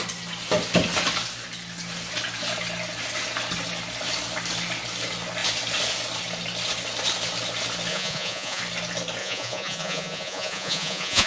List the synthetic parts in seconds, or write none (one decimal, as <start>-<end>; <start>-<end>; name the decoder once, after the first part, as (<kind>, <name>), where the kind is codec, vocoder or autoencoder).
7.9-8.6 (vocoder, Vocos); 9.2-11.3